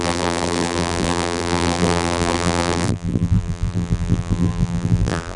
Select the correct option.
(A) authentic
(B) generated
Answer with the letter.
B